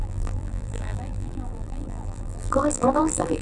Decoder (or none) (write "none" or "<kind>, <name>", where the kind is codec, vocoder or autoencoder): vocoder, BigVGAN v2